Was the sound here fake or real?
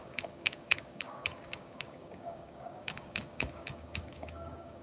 fake